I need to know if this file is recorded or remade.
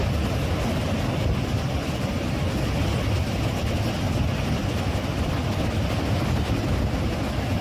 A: recorded